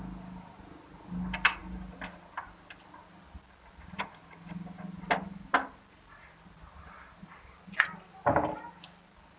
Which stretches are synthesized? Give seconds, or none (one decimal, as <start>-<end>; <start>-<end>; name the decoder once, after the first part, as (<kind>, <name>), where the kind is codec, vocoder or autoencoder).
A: none